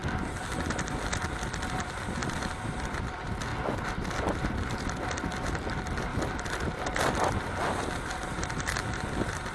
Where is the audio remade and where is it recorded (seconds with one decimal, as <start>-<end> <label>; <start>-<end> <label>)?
0.0-1.8 recorded; 1.8-3.5 remade; 3.5-4.2 recorded; 4.2-9.5 remade